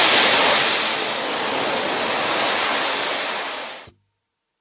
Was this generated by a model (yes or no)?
no